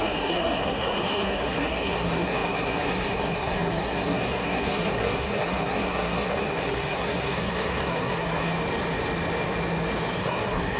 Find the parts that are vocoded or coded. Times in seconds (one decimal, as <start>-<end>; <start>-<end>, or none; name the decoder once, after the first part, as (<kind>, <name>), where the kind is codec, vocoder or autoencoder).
0.0-8.5 (codec, SNAC); 10.2-10.8

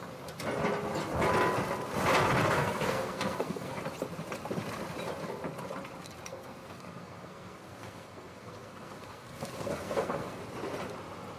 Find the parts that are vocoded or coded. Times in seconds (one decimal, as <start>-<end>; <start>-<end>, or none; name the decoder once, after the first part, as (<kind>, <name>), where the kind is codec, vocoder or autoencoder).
2.4-3.8 (codec, SNAC); 6.3-10.4

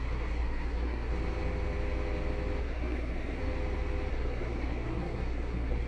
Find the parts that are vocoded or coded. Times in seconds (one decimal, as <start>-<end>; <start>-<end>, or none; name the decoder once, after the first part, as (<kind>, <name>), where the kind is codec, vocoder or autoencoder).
0.0-1.1 (codec, SNAC); 2.6-3.4; 4.1-5.9